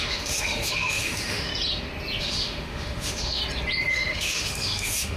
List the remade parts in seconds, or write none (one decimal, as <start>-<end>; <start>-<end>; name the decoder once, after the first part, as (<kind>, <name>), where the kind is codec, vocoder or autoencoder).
0.0-1.5 (autoencoder, DAC-VAE); 2.2-3.4; 3.9-5.2